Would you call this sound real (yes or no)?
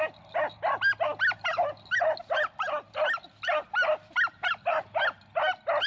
yes